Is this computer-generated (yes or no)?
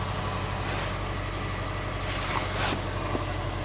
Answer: no